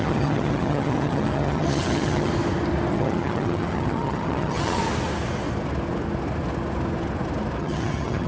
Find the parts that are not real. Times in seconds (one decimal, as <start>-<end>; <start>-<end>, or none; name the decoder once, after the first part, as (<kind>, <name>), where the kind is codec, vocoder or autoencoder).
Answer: 0.0-2.3 (vocoder, HiFi-GAN); 2.9-4.8; 7.6-8.3